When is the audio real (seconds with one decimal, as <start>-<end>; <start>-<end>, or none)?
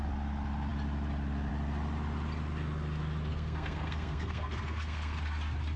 0.0-3.3; 5.2-5.8